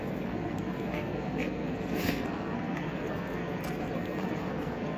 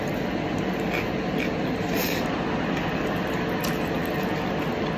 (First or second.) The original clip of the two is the second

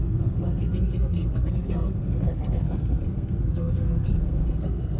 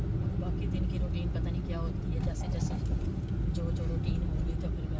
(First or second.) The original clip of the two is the second